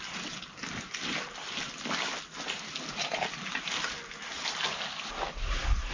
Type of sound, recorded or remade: recorded